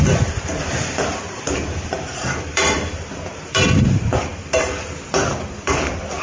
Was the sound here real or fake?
fake